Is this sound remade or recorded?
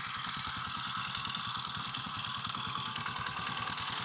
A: remade